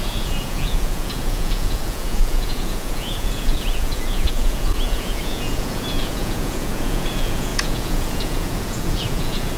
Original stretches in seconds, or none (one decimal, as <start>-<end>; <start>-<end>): none

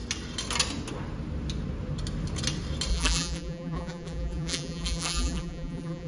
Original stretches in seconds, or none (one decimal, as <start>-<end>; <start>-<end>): 0.0-2.9

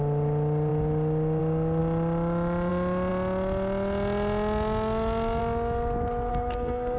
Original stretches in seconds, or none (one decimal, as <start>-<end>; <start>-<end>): 0.0-6.3

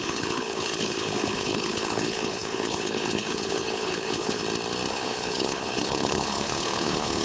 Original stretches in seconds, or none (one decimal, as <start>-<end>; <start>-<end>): 4.4-4.9

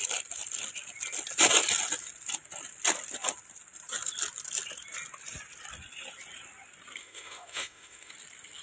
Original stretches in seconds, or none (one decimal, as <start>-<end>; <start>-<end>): 0.0-7.0; 8.1-8.6

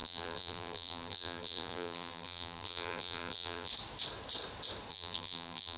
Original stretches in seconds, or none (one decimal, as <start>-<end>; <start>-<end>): 3.7-4.9

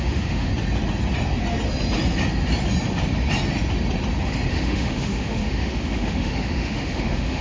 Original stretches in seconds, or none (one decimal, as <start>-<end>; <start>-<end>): 0.5-4.5

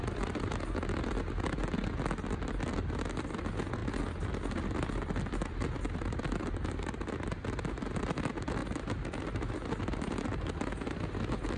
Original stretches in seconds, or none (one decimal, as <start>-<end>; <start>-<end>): 0.0-11.6